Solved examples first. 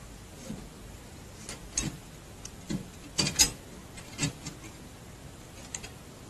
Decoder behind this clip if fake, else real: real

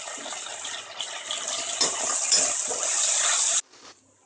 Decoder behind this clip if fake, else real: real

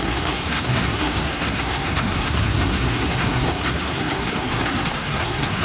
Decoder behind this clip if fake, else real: fake, codec, SNAC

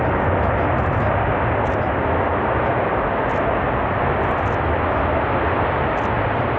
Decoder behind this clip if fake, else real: real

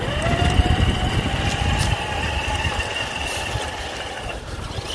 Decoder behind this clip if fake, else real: real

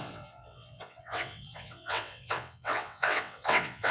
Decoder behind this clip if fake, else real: fake, vocoder, WaveNeXt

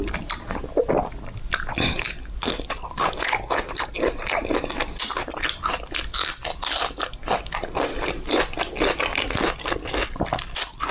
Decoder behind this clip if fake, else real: real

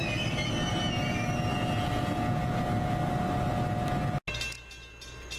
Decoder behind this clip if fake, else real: real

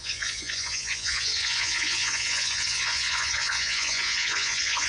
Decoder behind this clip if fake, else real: fake, vocoder, Vocos